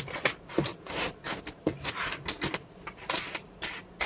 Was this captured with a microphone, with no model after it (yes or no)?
no